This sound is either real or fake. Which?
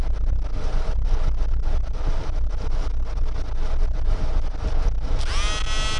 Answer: real